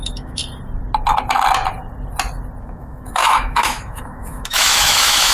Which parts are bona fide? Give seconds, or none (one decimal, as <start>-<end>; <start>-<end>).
0.4-2.6